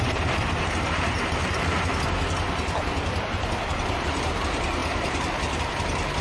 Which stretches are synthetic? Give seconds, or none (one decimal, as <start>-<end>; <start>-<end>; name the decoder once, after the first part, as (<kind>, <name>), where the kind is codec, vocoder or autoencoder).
0.0-1.4 (vocoder, BigVGAN v2); 3.2-6.2